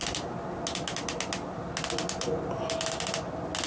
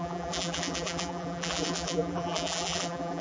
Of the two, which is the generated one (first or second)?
second